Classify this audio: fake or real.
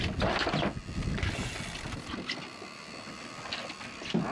real